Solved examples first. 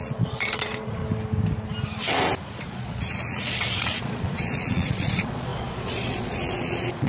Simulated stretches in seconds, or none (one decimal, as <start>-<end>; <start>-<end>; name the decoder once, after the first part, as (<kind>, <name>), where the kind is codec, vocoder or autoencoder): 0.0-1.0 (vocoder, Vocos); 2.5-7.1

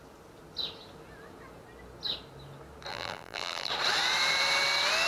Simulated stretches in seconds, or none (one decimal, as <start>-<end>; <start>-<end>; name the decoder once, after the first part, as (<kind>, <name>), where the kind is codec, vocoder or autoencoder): 2.9-3.7 (vocoder, BigVGAN v2)

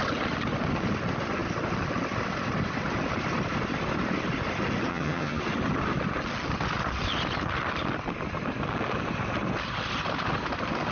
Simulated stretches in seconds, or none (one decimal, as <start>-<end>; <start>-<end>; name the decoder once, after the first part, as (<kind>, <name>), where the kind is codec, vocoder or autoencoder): 4.9-5.4 (vocoder, HiFi-GAN)

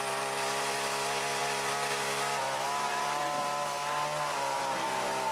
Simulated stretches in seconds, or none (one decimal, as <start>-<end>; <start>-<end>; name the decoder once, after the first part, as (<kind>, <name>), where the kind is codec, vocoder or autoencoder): 1.4-3.4 (vocoder, BigVGAN v2)

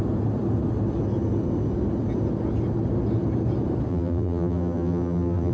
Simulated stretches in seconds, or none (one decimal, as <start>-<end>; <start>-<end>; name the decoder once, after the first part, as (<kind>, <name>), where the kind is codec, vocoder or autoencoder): 3.9-5.5 (vocoder, BigVGAN v2)

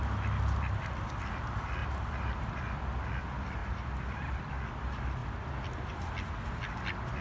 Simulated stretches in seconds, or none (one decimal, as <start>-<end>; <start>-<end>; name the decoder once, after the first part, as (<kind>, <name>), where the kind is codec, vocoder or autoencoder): 1.8-2.5 (vocoder, BigVGAN v2); 3.6-4.4; 5.2-5.9

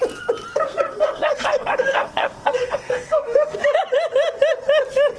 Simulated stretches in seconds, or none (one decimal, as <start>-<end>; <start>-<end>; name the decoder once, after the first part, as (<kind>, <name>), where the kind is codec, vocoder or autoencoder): 0.5-3.6 (codec, SNAC)